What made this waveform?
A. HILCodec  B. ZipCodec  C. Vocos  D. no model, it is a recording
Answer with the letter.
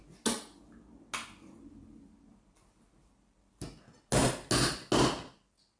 D